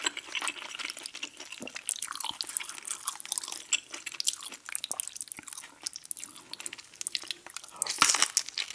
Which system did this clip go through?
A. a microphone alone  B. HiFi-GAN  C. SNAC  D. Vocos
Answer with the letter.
A